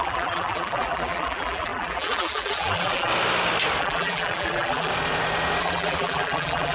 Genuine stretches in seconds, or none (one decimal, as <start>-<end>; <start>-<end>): 3.1-3.8; 4.9-5.6